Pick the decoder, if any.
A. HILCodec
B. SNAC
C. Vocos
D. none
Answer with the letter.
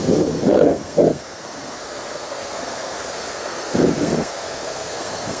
B